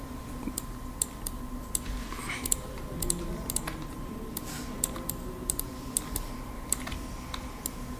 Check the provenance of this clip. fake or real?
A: real